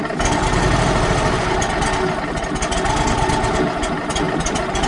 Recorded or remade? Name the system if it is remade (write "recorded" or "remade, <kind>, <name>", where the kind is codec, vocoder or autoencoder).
recorded